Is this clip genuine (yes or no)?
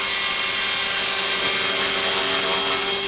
yes